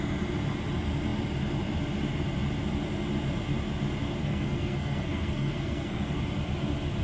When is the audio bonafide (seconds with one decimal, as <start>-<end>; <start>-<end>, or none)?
0.0-4.2; 6.2-7.0